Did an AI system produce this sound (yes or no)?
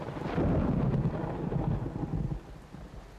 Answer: no